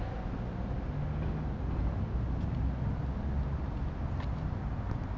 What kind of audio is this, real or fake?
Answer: real